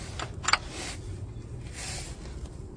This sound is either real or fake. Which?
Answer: real